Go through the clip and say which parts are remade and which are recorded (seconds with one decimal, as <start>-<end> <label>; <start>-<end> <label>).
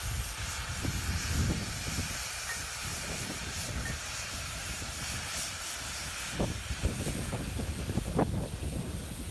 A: 0.0-2.9 recorded; 2.9-3.8 remade; 3.8-6.8 recorded; 6.8-8.1 remade; 8.1-9.3 recorded